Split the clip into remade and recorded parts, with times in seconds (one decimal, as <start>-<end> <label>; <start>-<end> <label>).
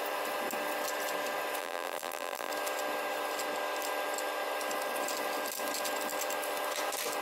0.0-1.6 recorded; 1.6-2.5 remade; 2.5-7.2 recorded